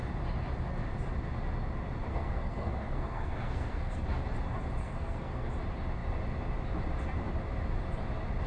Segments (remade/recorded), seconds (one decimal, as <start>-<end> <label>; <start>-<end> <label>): 0.0-2.1 recorded; 2.1-4.0 remade; 4.0-4.8 recorded; 4.8-5.5 remade; 5.5-8.5 recorded